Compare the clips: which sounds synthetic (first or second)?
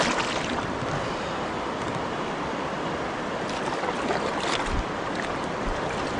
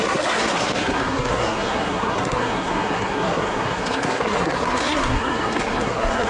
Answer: second